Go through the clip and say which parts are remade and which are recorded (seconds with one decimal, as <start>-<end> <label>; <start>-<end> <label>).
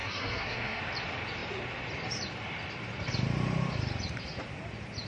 0.0-0.8 remade; 0.8-5.1 recorded